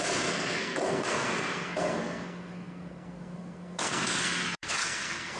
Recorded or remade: remade